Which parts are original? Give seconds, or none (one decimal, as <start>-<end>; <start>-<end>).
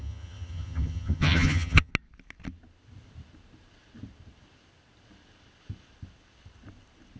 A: 1.9-7.2